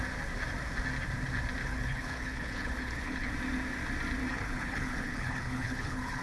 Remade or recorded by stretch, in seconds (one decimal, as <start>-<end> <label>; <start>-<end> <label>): 0.0-1.6 recorded; 1.6-3.3 remade; 3.3-4.3 recorded; 4.3-6.2 remade